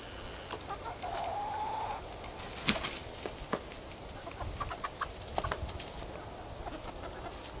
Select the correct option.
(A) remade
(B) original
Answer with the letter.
B